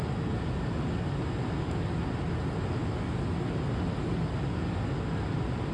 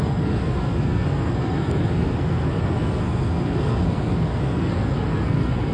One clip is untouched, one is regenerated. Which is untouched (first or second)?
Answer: first